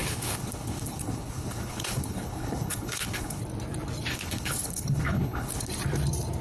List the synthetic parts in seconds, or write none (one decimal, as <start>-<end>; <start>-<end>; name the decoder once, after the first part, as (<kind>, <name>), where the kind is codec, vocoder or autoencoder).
0.0-3.4 (codec, HILCodec); 4.1-5.7